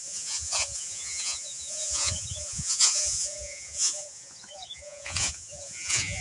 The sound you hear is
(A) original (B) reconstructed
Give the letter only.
B